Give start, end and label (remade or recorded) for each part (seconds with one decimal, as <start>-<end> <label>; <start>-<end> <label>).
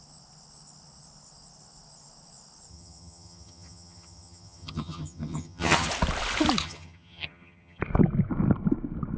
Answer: 0.0-2.7 recorded; 2.7-5.9 remade; 5.9-6.6 recorded; 6.6-7.8 remade; 7.8-9.2 recorded